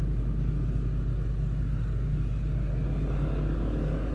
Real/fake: real